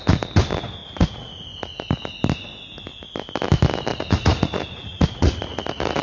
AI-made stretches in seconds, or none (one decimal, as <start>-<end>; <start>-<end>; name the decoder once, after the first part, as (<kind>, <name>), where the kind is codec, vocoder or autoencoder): 0.8-1.3 (vocoder, Vocos); 3.9-6.0